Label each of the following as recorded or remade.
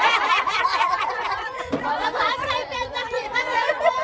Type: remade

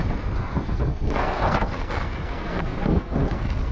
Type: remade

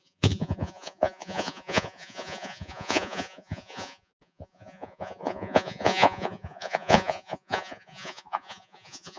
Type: remade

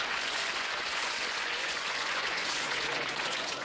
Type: remade